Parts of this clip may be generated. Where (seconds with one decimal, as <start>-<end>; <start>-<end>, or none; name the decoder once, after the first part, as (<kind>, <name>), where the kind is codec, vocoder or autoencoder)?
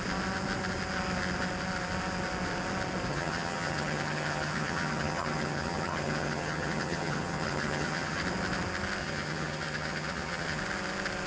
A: 3.1-8.2 (vocoder, HiFi-GAN); 9.0-10.6